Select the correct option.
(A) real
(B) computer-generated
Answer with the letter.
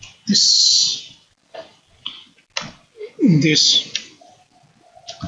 A